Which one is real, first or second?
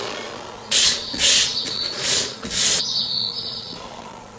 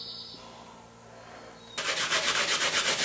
second